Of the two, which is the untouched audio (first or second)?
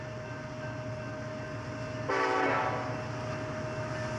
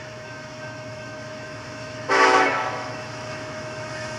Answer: first